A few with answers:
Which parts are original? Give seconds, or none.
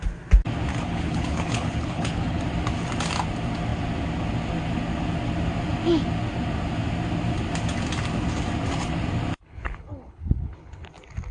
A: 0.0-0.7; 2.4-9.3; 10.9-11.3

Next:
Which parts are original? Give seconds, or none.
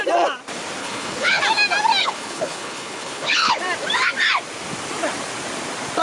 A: 0.0-0.8; 1.4-2.0; 3.6-6.0